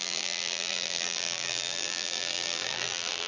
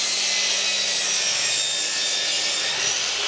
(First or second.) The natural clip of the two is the second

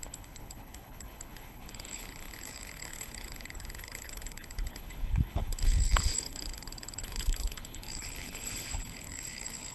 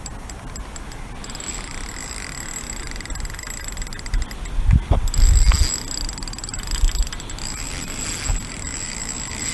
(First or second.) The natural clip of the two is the second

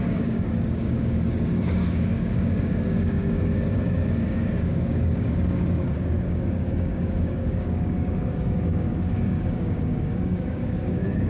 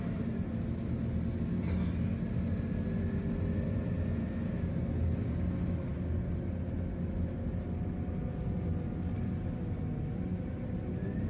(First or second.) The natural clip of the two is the second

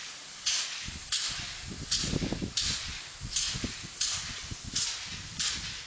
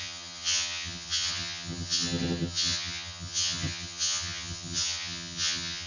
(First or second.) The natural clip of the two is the first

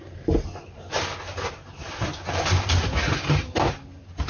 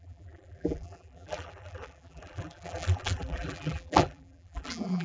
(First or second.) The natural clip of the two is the first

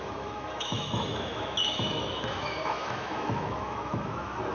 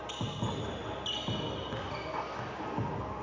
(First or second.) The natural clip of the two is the second